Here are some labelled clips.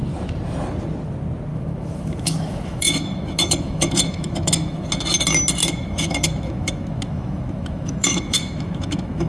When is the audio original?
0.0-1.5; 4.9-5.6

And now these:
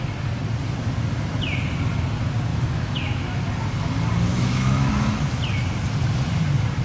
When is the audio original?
0.0-2.5; 3.4-4.3; 4.9-6.8

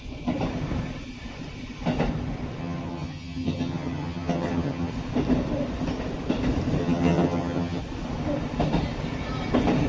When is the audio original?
0.0-2.6; 4.9-6.8; 7.8-9.9

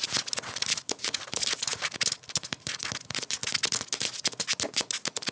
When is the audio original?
0.0-5.3

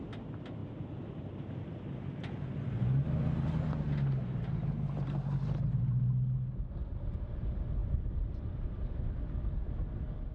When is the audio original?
0.0-7.8; 9.2-10.3

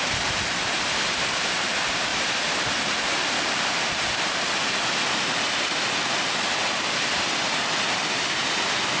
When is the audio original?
none

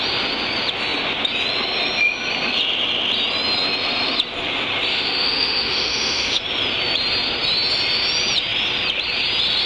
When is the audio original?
0.0-4.9; 6.4-9.7